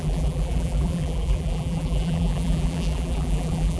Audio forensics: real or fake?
fake